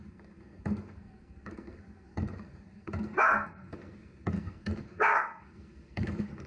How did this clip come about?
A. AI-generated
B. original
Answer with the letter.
A